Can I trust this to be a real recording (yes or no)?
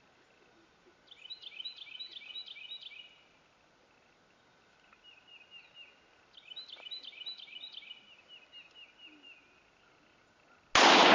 yes